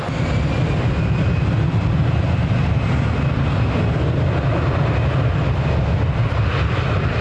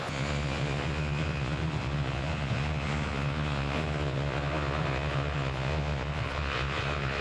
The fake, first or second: second